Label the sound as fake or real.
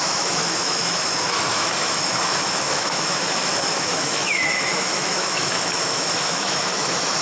fake